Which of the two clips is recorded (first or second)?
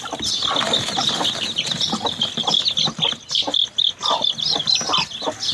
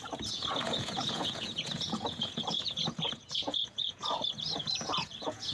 first